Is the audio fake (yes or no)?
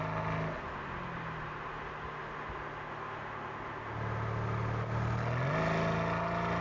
no